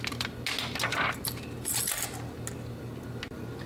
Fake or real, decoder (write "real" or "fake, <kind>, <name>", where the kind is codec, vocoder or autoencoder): real